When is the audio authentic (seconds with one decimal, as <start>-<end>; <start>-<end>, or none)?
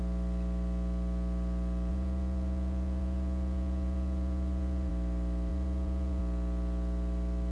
0.0-1.9; 4.9-5.5; 6.2-7.5